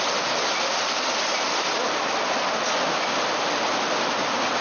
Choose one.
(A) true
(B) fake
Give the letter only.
A